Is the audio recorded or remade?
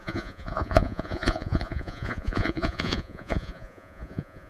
remade